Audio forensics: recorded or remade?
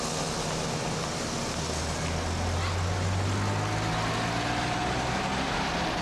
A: recorded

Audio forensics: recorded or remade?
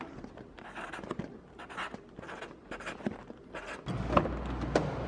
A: recorded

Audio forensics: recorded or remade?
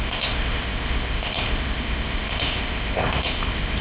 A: remade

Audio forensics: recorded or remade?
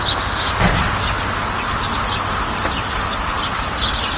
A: recorded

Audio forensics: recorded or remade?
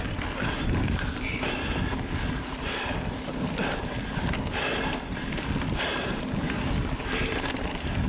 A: recorded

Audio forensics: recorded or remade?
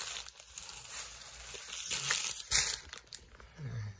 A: recorded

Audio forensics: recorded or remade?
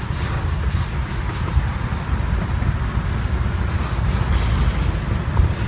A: recorded